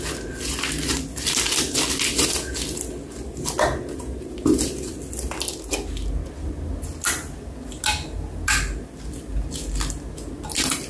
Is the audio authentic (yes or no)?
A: yes